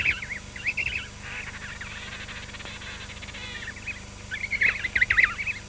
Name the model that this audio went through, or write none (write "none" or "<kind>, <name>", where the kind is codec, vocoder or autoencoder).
none